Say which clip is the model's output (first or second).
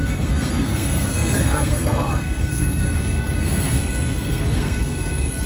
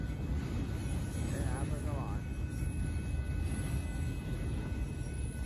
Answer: first